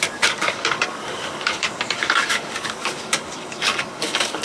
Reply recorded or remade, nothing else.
remade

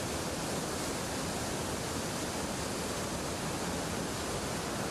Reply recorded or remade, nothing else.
recorded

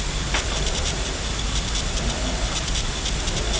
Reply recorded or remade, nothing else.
recorded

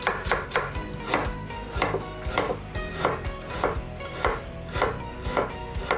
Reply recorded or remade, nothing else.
recorded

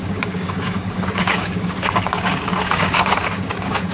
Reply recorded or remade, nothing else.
remade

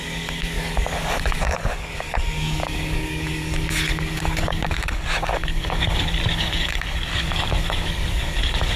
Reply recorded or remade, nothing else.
remade